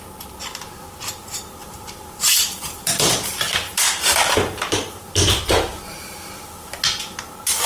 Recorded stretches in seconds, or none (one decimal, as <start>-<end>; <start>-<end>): 0.0-1.6; 5.8-7.7